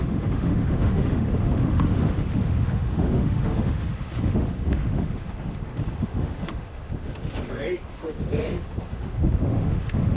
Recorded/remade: remade